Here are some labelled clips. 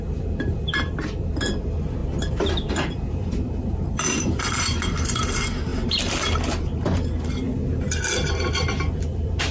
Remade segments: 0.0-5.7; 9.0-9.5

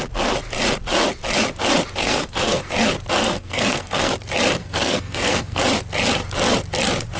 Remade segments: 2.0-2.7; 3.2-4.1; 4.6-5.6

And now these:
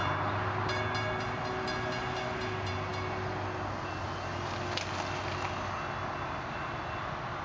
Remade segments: none

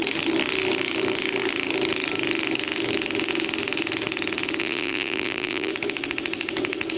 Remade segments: 4.6-5.7